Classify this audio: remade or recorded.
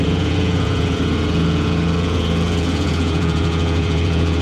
remade